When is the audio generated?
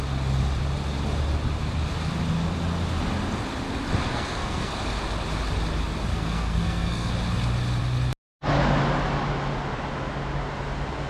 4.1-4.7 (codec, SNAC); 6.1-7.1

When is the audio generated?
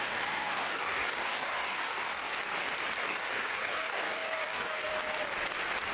0.0-2.3 (codec, DAC); 3.0-4.9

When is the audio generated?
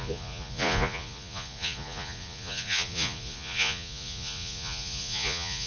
0.0-5.7 (vocoder, Vocos)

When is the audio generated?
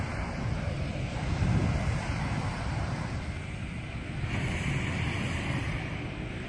none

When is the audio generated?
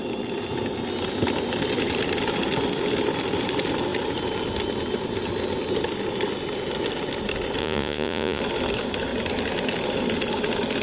7.6-8.4 (vocoder, Vocos)